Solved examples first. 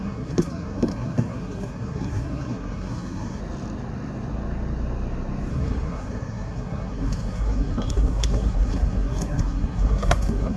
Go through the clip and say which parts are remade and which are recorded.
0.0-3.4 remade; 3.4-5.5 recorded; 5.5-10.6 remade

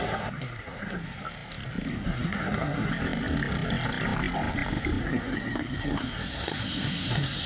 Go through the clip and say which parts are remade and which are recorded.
0.0-1.2 remade; 1.2-1.9 recorded; 1.9-2.9 remade; 2.9-5.0 recorded; 5.0-7.5 remade

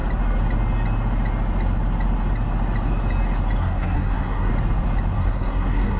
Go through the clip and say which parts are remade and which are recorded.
0.0-3.6 recorded; 3.6-4.5 remade; 4.5-5.1 recorded; 5.1-6.0 remade

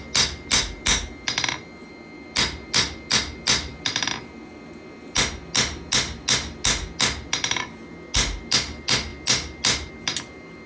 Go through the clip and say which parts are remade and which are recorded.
0.0-10.7 recorded

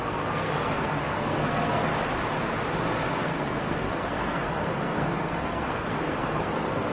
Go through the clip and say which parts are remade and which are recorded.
0.0-1.9 remade; 1.9-3.1 recorded; 3.1-6.9 remade

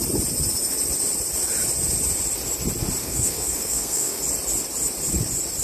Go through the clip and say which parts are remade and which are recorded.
0.0-3.0 recorded; 3.0-4.2 remade; 4.2-5.6 recorded

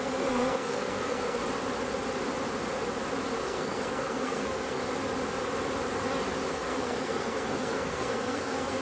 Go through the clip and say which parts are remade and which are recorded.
0.0-1.4 remade; 1.4-3.4 recorded; 3.4-4.8 remade; 4.8-6.5 recorded; 6.5-8.8 remade

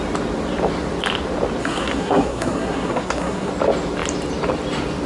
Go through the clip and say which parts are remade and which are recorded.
0.0-1.6 recorded; 1.6-3.5 remade; 3.5-5.1 recorded